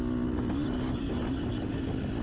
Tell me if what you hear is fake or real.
real